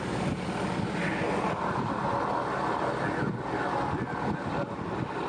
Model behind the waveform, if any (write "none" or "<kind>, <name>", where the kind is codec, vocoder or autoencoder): none